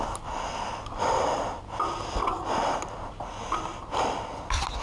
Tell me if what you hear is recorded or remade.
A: recorded